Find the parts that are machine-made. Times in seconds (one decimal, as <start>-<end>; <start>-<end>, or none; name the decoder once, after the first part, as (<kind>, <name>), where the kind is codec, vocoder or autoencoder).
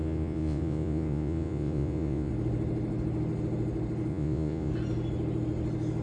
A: 0.0-2.3 (vocoder, Vocos); 4.1-4.7